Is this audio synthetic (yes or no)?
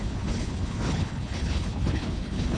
yes